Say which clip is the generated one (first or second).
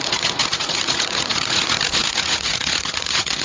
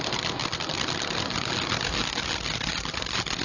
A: first